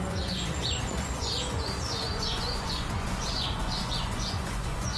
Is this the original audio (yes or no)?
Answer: no